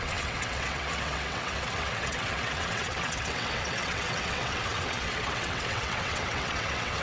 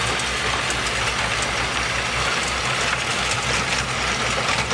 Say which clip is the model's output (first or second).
first